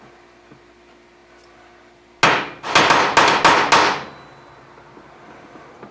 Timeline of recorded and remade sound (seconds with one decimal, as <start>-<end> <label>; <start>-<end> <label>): 0.0-5.9 recorded